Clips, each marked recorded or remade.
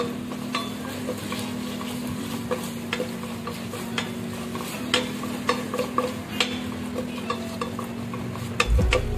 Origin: recorded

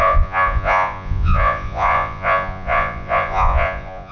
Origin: remade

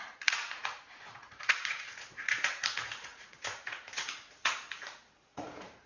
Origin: remade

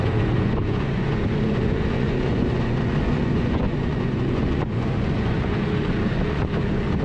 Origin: remade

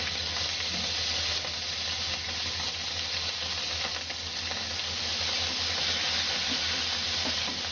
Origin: recorded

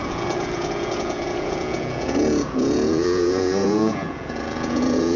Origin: remade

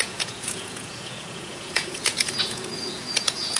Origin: remade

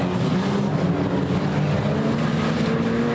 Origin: recorded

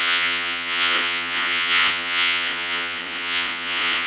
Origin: remade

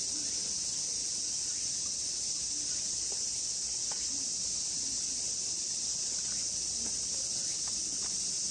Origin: recorded